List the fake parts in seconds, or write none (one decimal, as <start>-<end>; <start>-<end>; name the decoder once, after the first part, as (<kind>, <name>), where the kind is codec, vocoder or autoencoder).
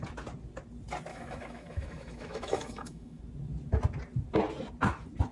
1.1-3.2 (autoencoder, DAC-VAE)